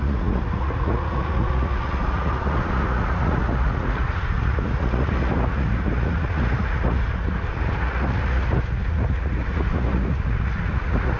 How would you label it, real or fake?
fake